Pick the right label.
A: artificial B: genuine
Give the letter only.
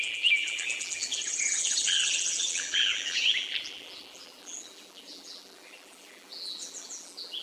A